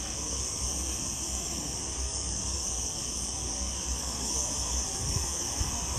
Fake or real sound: fake